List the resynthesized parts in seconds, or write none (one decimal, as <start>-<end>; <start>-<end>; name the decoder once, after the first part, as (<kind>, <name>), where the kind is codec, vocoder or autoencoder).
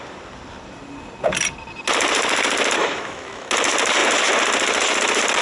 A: 2.8-3.5 (autoencoder, DAC-VAE)